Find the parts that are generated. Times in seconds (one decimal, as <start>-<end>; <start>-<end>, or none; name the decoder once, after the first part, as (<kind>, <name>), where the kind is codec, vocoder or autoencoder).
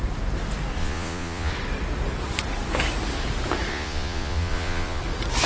0.8-1.5 (vocoder, Vocos); 3.7-5.0